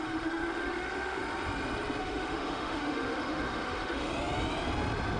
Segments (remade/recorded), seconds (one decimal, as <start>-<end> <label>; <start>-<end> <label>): 0.0-1.2 remade; 1.2-2.0 recorded; 2.0-4.1 remade; 4.1-5.2 recorded